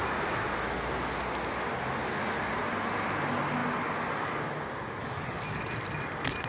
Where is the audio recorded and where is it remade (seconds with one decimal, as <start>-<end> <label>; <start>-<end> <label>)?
0.0-5.0 recorded; 5.0-5.6 remade; 5.6-6.5 recorded